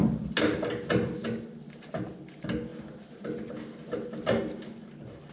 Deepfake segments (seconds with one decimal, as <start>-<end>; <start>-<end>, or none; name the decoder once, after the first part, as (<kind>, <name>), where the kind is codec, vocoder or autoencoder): none